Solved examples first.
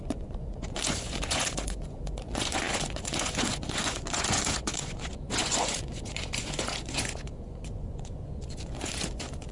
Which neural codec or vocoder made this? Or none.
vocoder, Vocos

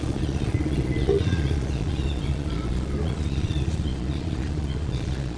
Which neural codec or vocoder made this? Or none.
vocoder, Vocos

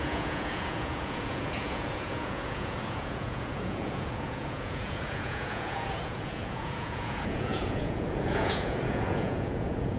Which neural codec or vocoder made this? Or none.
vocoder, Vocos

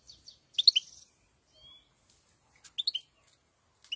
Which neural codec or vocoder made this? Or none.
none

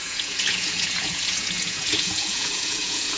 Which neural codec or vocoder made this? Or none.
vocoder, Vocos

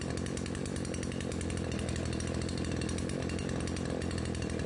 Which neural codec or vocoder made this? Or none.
none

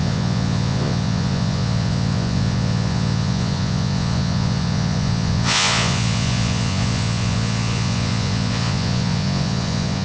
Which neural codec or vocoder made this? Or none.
vocoder, Vocos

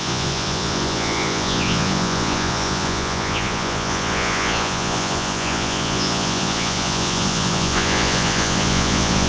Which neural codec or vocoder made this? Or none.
vocoder, Vocos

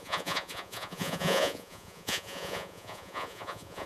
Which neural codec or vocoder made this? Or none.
vocoder, Vocos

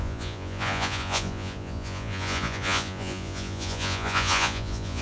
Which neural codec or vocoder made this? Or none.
vocoder, Vocos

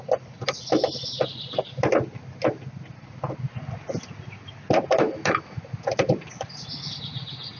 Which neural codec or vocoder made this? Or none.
none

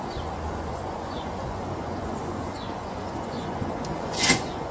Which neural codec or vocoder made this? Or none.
vocoder, Vocos